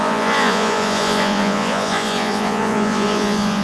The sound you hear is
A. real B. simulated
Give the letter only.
B